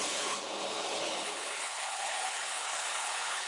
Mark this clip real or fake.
fake